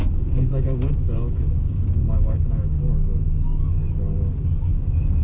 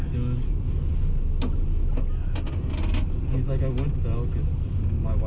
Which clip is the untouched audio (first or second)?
second